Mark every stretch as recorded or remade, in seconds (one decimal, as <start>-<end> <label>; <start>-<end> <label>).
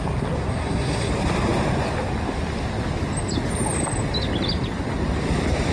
0.0-0.5 recorded; 0.5-1.1 remade; 1.1-5.7 recorded